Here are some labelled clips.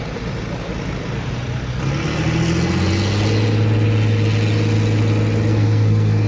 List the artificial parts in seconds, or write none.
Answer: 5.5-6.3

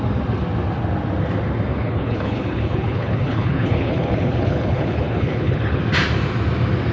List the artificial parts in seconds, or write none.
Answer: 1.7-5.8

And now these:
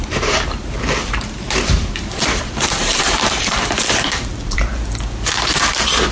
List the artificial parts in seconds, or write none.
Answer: 0.0-0.6; 1.0-4.7